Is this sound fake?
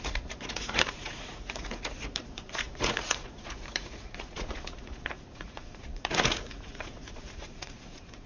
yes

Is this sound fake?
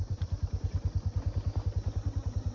no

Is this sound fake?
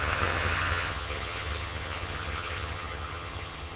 yes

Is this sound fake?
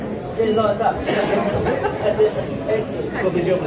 no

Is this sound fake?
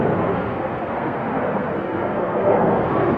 yes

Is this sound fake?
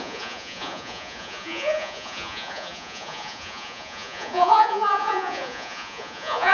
yes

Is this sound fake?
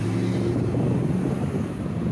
no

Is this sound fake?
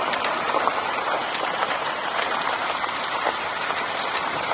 yes